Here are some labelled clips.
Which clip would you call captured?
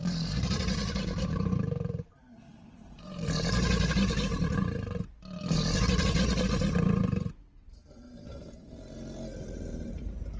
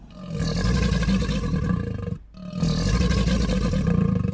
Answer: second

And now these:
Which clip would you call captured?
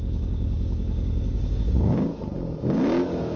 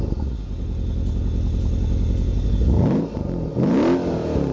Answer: second